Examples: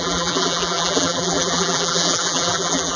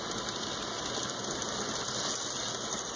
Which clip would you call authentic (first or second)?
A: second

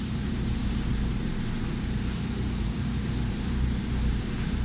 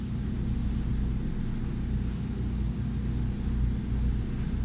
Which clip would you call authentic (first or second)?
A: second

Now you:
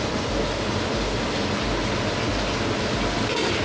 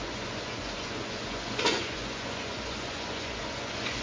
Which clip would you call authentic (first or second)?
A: first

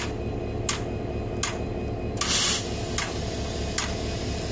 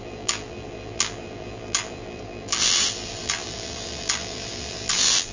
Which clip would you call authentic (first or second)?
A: first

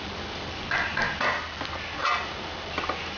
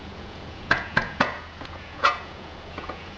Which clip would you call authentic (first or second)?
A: first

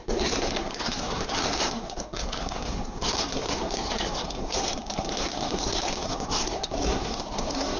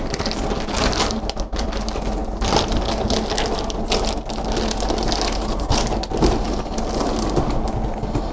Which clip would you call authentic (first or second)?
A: second